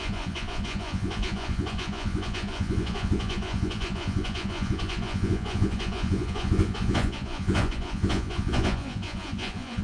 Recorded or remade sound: remade